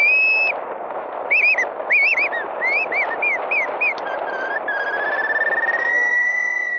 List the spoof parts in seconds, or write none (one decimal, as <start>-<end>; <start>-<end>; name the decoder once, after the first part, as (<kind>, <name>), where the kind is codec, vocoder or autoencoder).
5.8-6.8 (codec, SNAC)